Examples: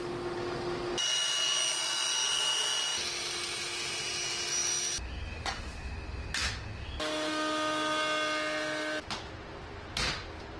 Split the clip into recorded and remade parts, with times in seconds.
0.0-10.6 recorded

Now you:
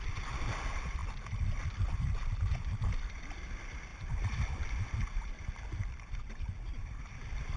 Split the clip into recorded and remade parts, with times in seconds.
0.0-3.9 recorded; 3.9-7.0 remade; 7.0-7.6 recorded

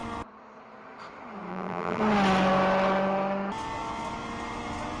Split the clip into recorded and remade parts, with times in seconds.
0.0-1.5 recorded; 1.5-2.0 remade; 2.0-5.0 recorded

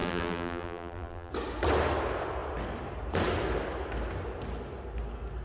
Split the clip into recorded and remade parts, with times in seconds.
0.0-1.3 remade; 1.3-5.4 recorded

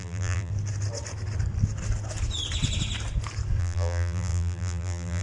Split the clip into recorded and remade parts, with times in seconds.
0.0-0.5 remade; 0.5-3.6 recorded; 3.6-5.2 remade

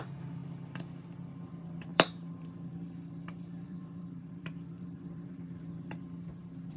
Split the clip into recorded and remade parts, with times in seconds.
0.0-0.4 recorded; 0.4-0.9 remade; 0.9-1.9 recorded; 1.9-6.0 remade; 6.0-6.8 recorded